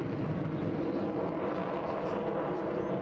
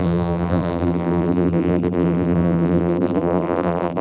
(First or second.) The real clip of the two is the first